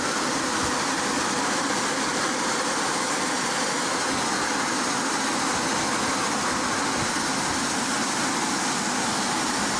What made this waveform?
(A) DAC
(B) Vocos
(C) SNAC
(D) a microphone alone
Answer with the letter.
D